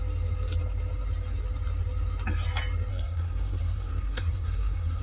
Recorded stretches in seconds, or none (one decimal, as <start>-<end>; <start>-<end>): 0.0-2.9